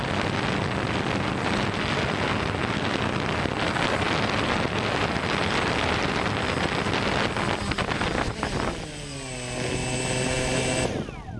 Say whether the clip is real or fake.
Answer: real